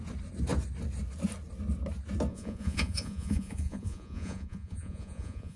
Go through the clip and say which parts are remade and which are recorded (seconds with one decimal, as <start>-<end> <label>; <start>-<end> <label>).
0.0-2.3 recorded; 2.3-5.6 remade